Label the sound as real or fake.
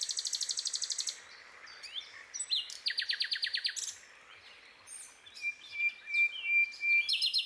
real